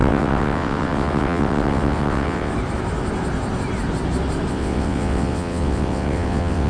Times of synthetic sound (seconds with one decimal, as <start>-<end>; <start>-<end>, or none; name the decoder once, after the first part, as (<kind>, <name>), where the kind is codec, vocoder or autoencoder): 0.0-2.5 (vocoder, WaveNeXt); 4.5-6.7